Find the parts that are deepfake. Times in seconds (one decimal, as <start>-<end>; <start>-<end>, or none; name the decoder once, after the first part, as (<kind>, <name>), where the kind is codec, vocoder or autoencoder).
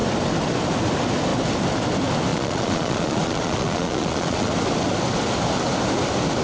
2.3-4.5 (vocoder, Vocos)